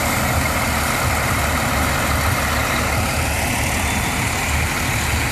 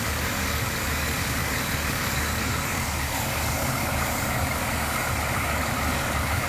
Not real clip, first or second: second